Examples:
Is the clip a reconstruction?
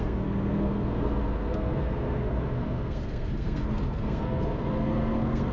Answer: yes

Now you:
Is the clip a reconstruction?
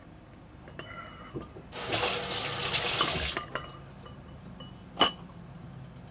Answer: no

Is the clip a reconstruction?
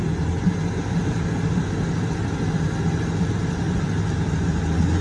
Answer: no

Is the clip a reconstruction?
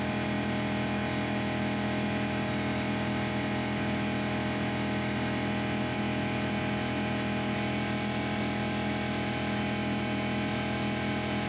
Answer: no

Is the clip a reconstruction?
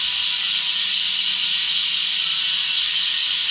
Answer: no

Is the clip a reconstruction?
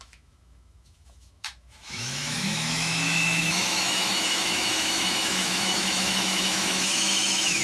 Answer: yes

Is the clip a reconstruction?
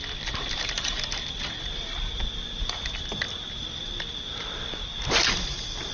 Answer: no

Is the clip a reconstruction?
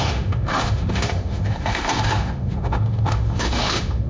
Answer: yes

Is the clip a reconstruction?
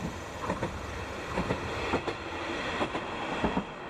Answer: no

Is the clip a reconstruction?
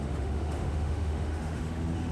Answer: yes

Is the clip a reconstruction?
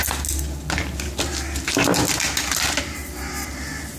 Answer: no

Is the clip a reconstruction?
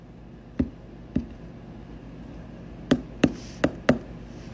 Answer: no